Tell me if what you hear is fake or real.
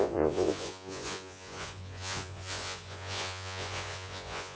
fake